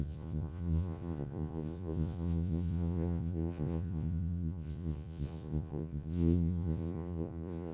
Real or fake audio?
fake